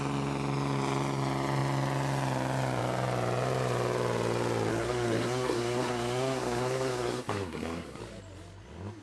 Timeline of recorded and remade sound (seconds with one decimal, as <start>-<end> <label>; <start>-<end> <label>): 0.0-4.7 recorded; 4.7-8.0 remade; 8.0-9.0 recorded